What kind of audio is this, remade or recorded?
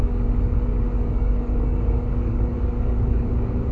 remade